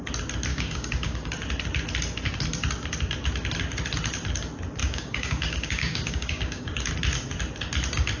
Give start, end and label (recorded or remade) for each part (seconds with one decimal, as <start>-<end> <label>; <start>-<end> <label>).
0.0-0.5 recorded; 0.5-1.3 remade; 1.3-4.8 recorded; 4.8-6.9 remade; 6.9-8.2 recorded